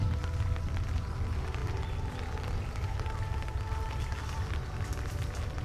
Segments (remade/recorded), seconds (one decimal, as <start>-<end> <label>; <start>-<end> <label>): 0.0-5.6 recorded